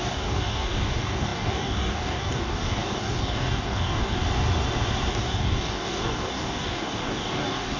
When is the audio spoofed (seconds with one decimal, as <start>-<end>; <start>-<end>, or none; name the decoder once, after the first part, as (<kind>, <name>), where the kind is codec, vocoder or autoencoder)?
0.0-4.2 (codec, DAC); 5.1-7.8

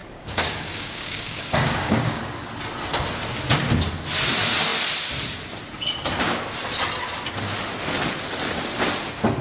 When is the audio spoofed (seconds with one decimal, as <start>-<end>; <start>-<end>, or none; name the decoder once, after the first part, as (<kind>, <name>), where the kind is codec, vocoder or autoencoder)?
0.0-2.2 (codec, DAC)

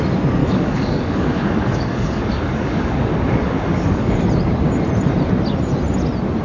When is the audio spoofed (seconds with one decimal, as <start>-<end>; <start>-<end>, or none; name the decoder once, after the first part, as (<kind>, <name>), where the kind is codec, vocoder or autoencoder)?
0.4-4.2 (codec, DAC)